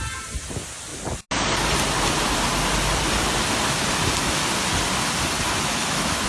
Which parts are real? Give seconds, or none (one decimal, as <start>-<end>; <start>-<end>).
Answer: 0.0-5.7